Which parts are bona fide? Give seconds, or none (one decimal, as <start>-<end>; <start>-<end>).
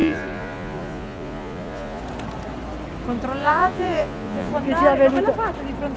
2.0-3.4; 4.5-6.0